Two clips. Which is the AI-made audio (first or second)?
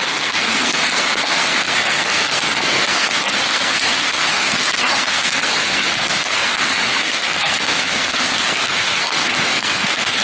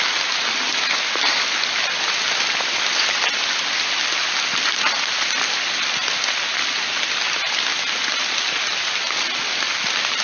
first